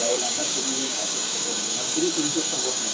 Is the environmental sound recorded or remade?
remade